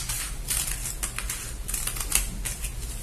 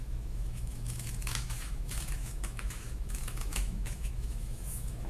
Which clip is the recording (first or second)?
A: first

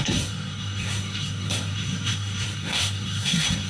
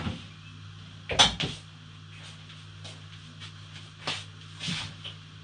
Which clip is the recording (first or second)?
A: second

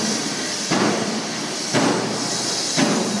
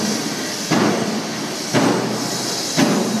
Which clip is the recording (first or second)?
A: second